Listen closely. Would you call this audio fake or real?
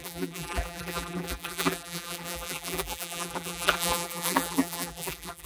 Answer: fake